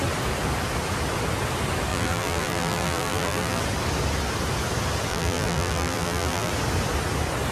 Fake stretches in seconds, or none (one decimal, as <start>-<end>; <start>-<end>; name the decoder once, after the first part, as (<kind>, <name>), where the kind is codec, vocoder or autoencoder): 1.9-3.6 (vocoder, BigVGAN v2); 5.1-6.5